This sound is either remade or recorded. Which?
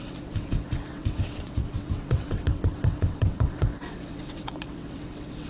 remade